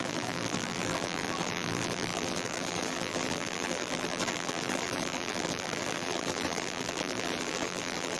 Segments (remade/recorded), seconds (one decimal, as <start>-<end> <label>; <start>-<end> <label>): 0.0-8.2 remade